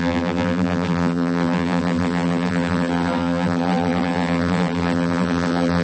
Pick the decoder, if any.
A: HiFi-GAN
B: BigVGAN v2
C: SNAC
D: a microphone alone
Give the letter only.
B